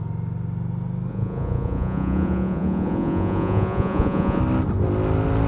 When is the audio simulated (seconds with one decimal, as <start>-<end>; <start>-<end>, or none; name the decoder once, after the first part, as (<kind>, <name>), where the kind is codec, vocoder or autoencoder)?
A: 1.1-4.4 (vocoder, Vocos)